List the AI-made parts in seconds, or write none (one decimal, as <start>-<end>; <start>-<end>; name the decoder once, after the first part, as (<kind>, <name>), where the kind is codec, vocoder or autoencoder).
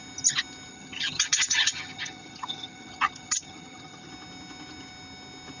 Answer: 0.7-4.1 (vocoder, HiFi-GAN)